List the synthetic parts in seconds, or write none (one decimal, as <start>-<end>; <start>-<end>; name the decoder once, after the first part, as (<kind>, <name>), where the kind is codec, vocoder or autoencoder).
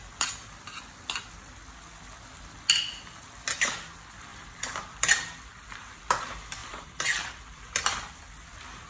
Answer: 4.3-6.0 (vocoder, BigVGAN v2); 6.6-8.2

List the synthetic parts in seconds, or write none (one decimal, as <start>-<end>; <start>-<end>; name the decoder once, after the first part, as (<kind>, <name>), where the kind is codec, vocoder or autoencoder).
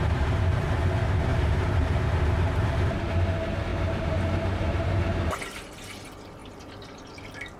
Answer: 1.3-2.0 (vocoder, BigVGAN v2); 3.7-5.2; 6.4-7.1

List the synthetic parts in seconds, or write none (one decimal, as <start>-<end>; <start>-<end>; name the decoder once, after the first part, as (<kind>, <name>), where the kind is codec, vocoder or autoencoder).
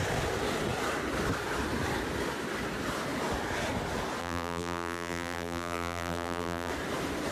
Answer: 4.2-6.7 (vocoder, BigVGAN v2)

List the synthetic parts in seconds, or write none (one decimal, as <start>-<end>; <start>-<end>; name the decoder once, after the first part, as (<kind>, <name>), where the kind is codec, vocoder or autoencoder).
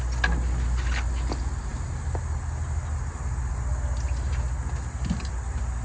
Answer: none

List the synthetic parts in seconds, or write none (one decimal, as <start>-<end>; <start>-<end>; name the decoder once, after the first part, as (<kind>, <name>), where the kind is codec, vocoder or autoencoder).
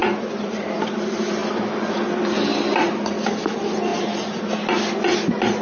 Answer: 0.0-0.8 (vocoder, BigVGAN v2); 3.9-4.5